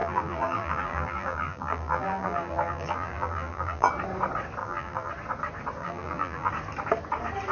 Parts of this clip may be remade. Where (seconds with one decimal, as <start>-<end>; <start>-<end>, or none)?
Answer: 0.0-3.9; 4.6-5.1; 5.8-6.5